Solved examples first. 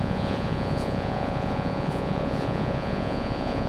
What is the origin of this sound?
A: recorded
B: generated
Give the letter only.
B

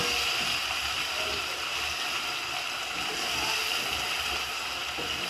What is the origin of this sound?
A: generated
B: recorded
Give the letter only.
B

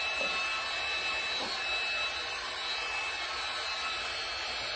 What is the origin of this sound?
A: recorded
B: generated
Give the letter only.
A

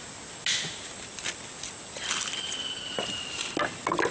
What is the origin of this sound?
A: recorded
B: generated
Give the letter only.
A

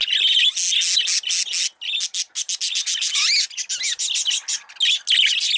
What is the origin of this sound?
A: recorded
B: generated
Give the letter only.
A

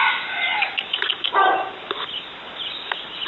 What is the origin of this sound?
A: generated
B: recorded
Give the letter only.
B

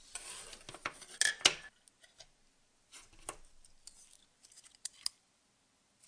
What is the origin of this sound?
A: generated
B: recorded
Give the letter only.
B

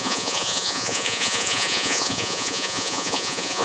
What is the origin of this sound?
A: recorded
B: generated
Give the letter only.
B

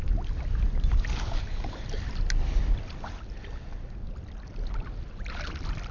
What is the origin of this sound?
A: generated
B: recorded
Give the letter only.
B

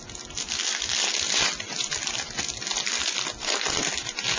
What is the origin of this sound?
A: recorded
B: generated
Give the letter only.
A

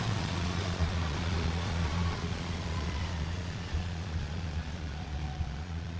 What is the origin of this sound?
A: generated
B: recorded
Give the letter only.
A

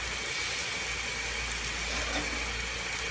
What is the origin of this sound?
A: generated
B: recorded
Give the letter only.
B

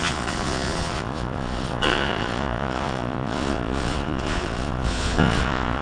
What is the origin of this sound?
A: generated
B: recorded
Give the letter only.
A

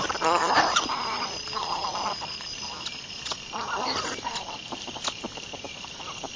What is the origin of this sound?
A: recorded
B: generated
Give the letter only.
A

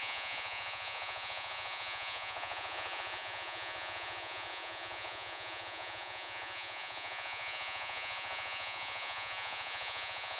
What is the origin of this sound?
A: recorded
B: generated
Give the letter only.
B